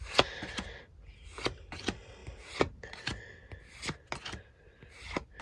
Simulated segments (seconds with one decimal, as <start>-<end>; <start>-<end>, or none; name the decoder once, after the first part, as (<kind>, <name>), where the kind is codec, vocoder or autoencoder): none